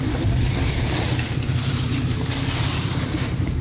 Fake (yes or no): yes